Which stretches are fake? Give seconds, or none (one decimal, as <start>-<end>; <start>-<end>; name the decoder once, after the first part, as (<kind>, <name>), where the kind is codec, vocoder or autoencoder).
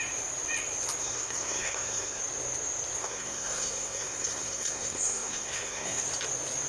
1.0-2.2 (codec, SNAC); 3.0-6.0